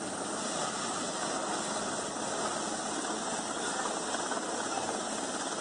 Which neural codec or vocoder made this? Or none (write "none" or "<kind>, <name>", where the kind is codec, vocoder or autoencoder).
none